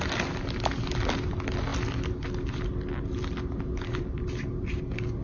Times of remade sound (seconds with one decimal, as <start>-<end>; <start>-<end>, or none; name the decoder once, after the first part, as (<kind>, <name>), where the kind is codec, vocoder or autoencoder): none